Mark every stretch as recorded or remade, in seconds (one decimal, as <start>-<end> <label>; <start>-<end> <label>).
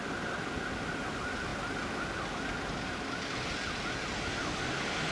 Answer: 0.0-5.1 recorded